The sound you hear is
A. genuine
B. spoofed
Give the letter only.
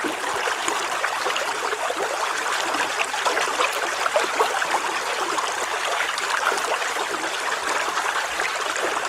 A